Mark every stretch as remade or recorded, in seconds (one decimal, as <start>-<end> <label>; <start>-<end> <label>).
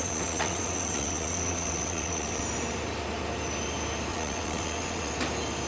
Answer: 0.0-2.4 remade; 2.4-4.1 recorded; 4.1-5.1 remade; 5.1-5.7 recorded